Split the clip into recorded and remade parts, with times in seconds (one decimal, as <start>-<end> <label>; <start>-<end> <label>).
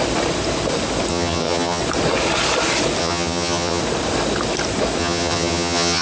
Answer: 0.0-1.1 recorded; 1.1-1.8 remade; 1.8-3.0 recorded; 3.0-3.8 remade; 3.8-5.0 recorded; 5.0-6.0 remade